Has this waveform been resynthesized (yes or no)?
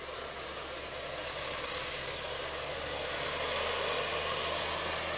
no